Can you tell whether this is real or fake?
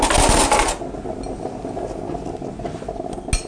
real